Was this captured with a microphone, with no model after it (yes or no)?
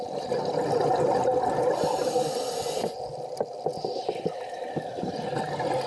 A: yes